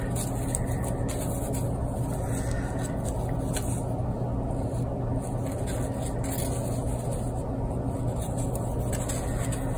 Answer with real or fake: real